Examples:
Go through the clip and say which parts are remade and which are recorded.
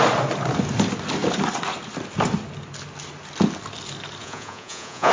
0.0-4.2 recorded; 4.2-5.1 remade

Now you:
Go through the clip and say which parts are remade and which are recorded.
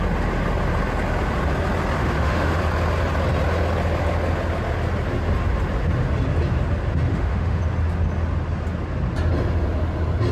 0.0-2.0 recorded; 2.0-2.6 remade; 2.6-7.1 recorded; 7.1-7.6 remade; 7.6-10.3 recorded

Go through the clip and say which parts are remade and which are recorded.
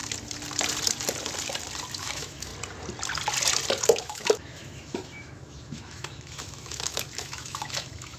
0.0-2.0 recorded; 2.0-2.5 remade; 2.5-4.0 recorded; 4.0-8.2 remade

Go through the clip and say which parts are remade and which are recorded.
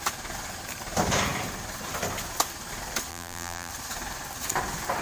0.0-3.1 recorded; 3.1-3.7 remade; 3.7-5.0 recorded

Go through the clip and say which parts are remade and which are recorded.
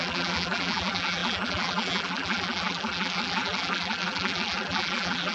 0.0-5.3 remade